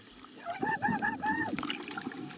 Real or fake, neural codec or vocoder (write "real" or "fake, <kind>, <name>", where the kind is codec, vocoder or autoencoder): real